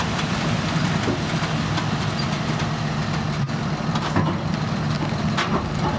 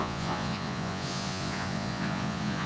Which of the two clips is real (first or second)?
first